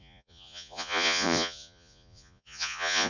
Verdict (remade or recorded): remade